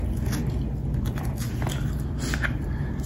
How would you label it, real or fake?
real